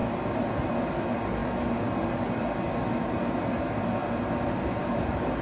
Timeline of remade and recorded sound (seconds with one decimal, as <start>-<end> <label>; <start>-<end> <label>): 0.0-4.0 recorded; 4.0-5.4 remade